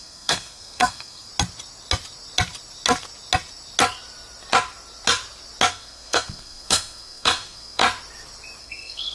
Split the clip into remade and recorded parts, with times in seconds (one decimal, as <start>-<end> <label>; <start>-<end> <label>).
0.0-1.3 remade; 1.3-5.7 recorded; 5.7-7.8 remade; 7.8-8.6 recorded; 8.6-9.1 remade